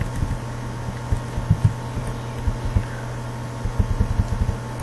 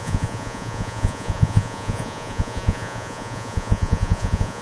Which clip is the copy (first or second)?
second